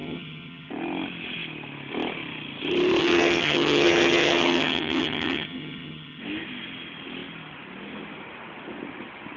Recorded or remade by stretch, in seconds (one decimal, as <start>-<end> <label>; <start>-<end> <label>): 0.0-0.7 remade; 0.7-3.0 recorded; 3.0-6.2 remade; 6.2-9.4 recorded